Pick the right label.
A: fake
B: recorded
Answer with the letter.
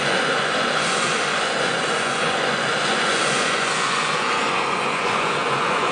A